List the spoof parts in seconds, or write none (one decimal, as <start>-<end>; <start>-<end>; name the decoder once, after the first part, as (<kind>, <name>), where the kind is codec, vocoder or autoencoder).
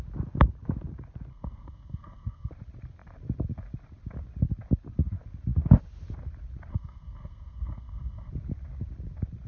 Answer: 1.3-2.5 (codec, SNAC); 6.7-8.3